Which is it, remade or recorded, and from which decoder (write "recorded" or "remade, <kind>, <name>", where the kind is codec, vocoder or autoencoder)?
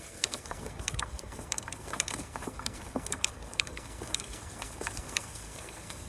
remade, codec, SNAC